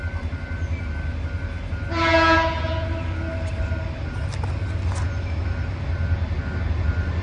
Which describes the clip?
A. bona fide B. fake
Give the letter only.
A